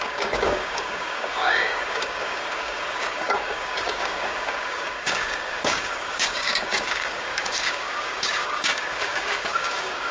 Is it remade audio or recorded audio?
remade